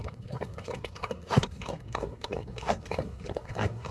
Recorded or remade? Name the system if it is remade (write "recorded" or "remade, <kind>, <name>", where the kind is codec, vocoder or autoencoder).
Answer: remade, codec, SNAC